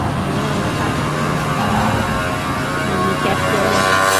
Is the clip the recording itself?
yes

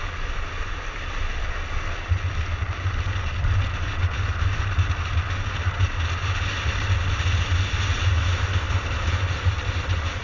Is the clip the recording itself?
yes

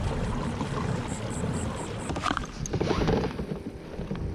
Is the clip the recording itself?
yes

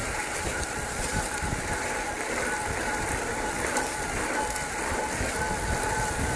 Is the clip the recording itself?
yes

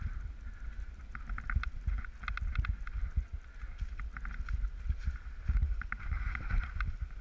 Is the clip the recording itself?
yes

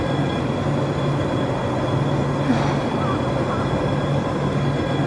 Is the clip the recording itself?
yes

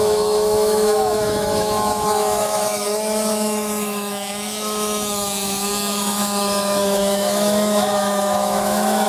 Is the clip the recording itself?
no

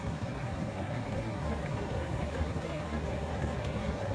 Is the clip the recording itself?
no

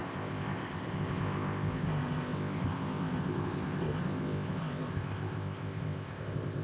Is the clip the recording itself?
no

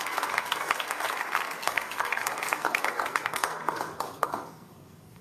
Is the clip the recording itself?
no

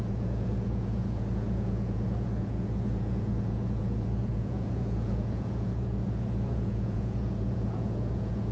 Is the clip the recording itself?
no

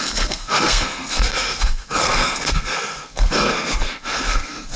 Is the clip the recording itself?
no